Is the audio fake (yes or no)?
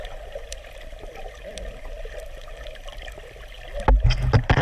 no